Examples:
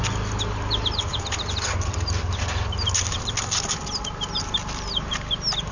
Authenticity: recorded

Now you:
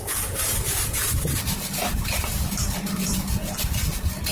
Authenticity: remade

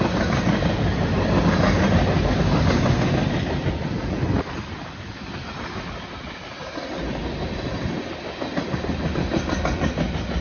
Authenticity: recorded